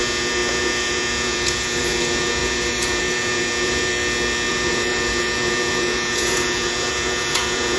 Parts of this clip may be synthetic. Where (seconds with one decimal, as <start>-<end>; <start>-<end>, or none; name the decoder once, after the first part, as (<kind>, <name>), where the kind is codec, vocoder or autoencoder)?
0.0-3.9 (vocoder, Vocos); 4.5-7.8